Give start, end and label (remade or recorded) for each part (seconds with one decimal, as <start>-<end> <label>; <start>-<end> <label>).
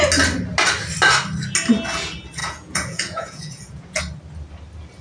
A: 0.0-2.4 recorded; 2.4-4.0 remade; 4.0-5.0 recorded